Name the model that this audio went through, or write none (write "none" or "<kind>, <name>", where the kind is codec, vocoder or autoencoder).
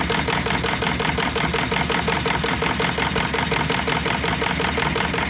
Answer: none